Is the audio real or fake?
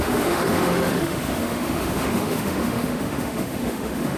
fake